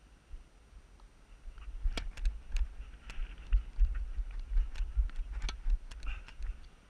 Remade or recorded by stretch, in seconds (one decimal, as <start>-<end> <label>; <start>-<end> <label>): 0.0-6.9 recorded